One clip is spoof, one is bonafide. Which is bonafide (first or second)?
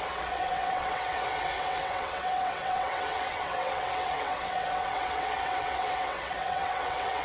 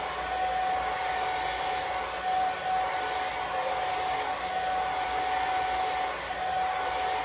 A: second